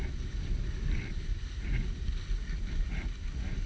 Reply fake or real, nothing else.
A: real